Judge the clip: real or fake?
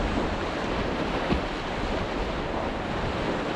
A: real